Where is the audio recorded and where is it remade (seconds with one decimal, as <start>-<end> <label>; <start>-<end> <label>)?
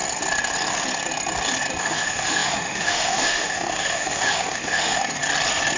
0.0-1.8 recorded; 1.8-5.0 remade; 5.0-5.8 recorded